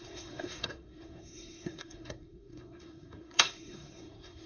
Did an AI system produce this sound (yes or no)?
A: yes